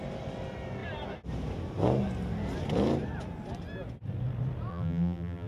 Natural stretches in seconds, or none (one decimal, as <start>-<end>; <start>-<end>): 0.0-4.7